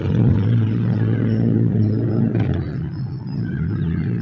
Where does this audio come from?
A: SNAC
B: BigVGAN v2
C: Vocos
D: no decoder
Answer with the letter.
C